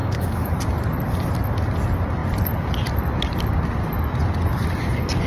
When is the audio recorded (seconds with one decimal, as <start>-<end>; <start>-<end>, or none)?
0.6-5.3